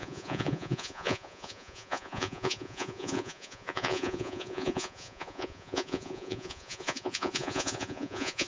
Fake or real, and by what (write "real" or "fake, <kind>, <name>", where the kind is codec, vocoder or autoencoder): fake, vocoder, Vocos